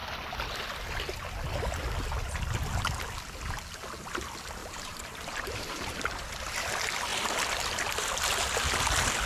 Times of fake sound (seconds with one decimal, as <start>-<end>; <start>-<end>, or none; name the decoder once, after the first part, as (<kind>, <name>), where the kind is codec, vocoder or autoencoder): 4.6-6.3 (vocoder, BigVGAN v2)